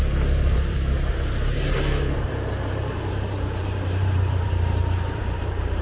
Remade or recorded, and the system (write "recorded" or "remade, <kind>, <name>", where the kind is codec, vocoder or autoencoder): remade, vocoder, BigVGAN v2